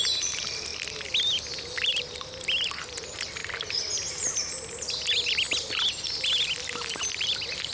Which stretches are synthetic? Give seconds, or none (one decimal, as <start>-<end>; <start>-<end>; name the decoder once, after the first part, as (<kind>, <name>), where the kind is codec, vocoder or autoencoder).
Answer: none